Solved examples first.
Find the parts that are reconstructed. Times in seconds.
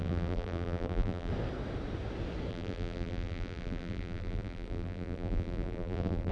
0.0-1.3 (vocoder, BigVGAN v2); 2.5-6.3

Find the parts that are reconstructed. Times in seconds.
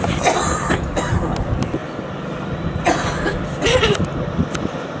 none